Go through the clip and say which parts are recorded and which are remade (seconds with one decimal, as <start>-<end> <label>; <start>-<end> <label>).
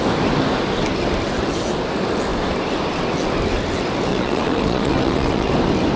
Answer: 0.0-4.1 recorded; 4.1-5.5 remade; 5.5-6.0 recorded